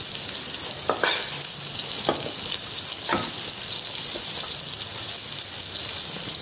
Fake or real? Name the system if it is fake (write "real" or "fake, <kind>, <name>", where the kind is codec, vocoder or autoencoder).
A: real